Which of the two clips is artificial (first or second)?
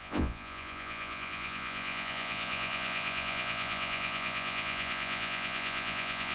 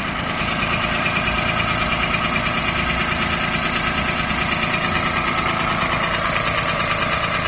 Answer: first